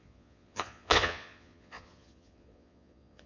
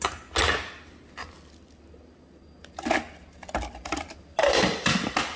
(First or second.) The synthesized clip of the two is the first